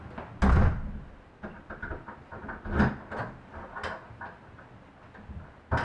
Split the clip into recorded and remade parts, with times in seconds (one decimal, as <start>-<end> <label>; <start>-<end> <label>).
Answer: 0.0-5.8 recorded